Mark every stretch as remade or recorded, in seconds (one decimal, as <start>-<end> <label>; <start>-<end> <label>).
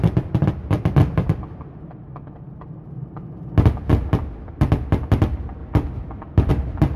0.0-5.6 recorded; 5.6-6.5 remade; 6.5-7.0 recorded